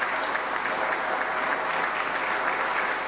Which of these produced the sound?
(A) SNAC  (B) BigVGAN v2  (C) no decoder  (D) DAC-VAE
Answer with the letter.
C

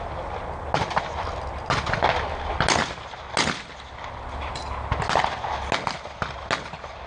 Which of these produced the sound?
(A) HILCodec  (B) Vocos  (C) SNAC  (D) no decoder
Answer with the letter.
D